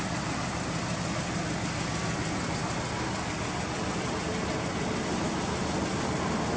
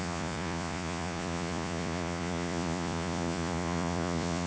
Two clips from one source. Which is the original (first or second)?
first